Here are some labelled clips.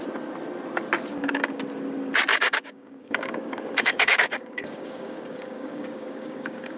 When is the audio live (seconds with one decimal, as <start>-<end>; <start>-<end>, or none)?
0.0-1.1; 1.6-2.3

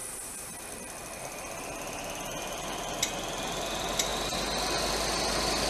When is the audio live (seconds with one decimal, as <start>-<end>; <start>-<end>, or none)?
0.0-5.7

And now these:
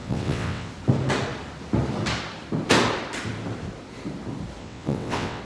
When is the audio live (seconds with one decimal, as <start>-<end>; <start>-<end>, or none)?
0.7-4.6

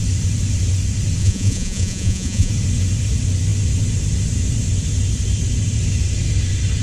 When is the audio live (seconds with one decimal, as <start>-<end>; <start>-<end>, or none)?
0.0-1.2; 2.5-6.8